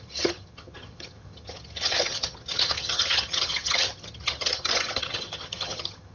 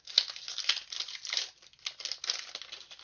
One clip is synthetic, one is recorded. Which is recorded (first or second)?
second